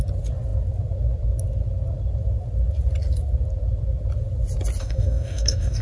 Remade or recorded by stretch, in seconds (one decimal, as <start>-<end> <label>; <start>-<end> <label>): 0.0-4.8 recorded; 4.8-5.8 remade